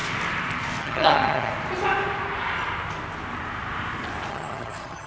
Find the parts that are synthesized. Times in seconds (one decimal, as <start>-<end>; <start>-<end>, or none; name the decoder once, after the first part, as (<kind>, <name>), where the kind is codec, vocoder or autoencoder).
0.8-1.5 (vocoder, HiFi-GAN); 4.3-5.1